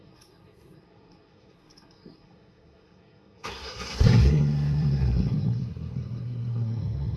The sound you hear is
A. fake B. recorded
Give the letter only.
A